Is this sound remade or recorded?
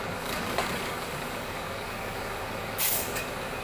remade